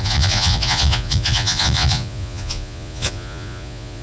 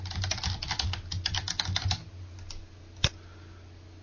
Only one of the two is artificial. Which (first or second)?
first